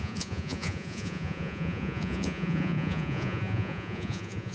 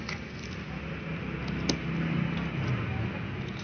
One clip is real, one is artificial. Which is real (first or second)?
second